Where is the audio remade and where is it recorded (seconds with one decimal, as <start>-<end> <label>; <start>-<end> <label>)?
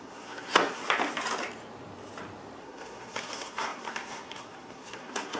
0.0-0.8 remade; 0.8-2.6 recorded; 2.6-5.4 remade